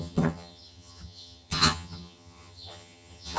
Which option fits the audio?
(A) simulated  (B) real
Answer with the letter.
A